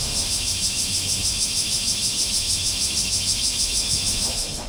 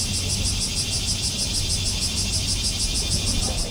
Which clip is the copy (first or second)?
first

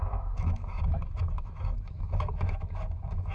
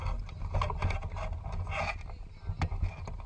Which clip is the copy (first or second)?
first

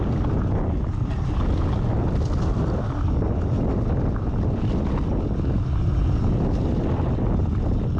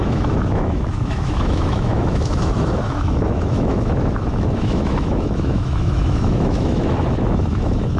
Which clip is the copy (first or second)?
second